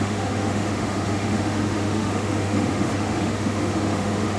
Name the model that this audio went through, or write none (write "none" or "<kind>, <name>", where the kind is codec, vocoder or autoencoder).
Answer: autoencoder, DAC-VAE